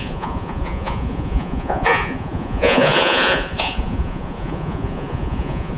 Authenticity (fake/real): fake